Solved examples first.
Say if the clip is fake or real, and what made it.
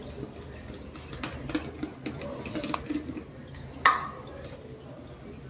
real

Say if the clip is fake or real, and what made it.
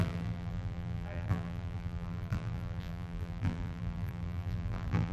fake, vocoder, BigVGAN v2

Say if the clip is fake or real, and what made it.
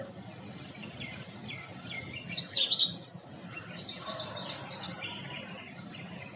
real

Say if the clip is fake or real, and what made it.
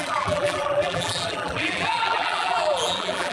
fake, vocoder, BigVGAN v2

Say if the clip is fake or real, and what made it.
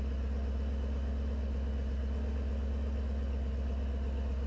real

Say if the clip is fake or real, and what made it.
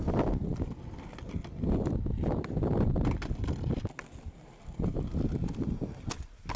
real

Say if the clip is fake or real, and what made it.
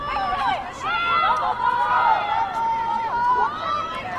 real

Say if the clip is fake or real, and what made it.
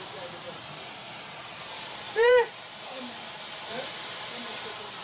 fake, vocoder, BigVGAN v2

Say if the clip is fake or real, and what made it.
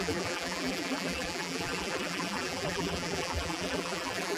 fake, vocoder, BigVGAN v2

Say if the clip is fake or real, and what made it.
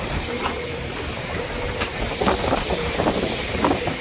fake, vocoder, BigVGAN v2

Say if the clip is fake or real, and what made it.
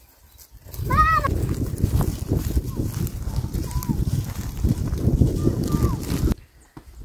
real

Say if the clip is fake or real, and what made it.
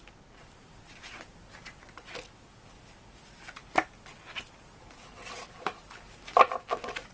real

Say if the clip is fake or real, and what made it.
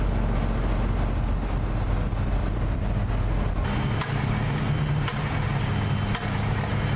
real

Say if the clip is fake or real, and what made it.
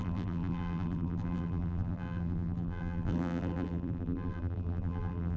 fake, vocoder, BigVGAN v2